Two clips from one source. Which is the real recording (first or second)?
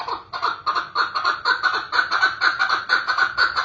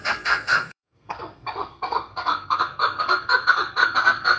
first